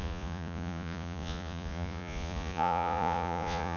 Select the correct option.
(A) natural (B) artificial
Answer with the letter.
B